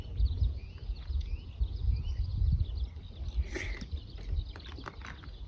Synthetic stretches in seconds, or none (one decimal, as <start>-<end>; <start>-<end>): 0.6-1.5